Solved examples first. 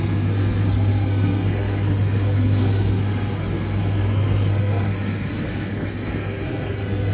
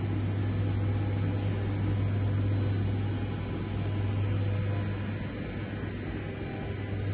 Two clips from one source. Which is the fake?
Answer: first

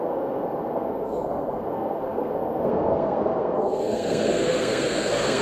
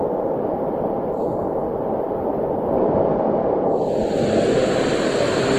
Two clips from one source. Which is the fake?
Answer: first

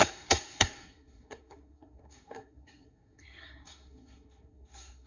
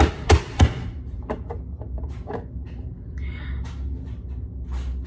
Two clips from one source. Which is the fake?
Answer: first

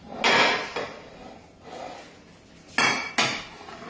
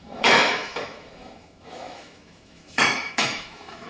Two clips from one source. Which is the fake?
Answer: second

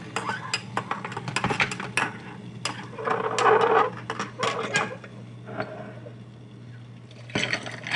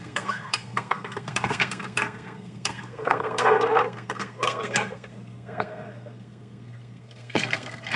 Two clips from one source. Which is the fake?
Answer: second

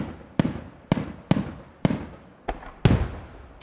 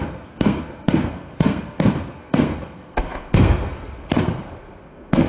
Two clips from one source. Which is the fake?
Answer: second